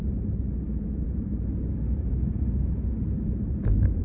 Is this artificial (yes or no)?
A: yes